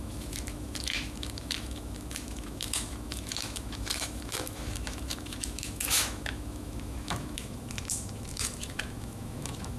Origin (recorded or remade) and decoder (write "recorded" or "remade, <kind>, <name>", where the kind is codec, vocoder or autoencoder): remade, autoencoder, DAC-VAE